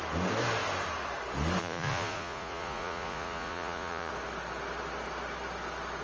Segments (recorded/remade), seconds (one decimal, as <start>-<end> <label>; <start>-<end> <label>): 0.0-1.6 recorded; 1.6-4.1 remade; 4.1-6.0 recorded